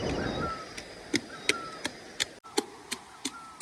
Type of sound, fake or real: real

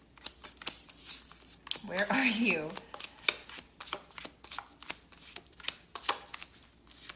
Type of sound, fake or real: real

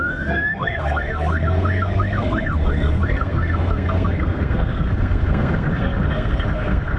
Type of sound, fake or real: fake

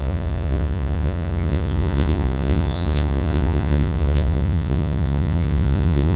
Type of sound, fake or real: fake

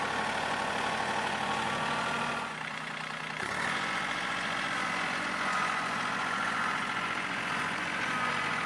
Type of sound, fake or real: fake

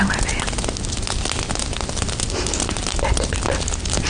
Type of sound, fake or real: real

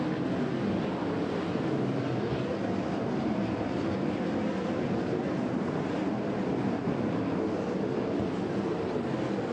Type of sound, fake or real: real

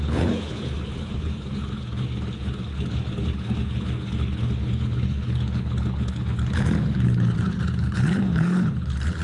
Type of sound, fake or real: fake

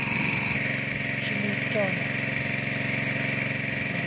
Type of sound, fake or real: real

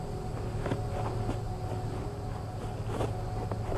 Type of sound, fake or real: real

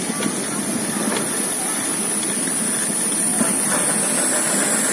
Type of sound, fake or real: real